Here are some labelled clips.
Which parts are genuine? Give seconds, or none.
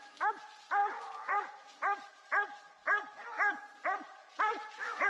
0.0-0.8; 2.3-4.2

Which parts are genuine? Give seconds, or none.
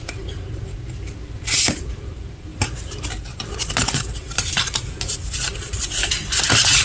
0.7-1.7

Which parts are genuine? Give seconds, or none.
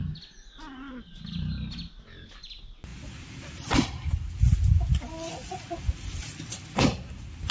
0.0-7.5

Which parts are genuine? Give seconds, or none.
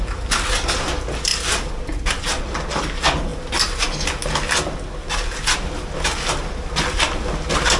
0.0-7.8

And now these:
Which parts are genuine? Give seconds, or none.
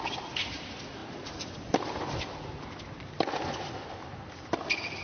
0.0-1.0; 4.0-5.0